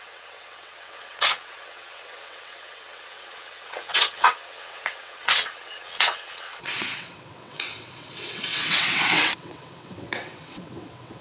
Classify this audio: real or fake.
fake